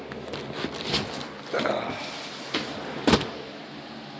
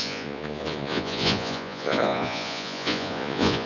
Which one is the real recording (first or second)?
first